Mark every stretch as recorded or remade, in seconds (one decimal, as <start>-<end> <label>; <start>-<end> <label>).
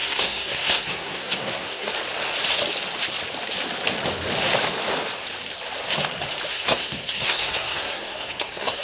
0.0-1.9 remade; 1.9-6.5 recorded; 6.5-8.8 remade